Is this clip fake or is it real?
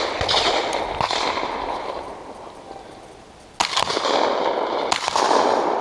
real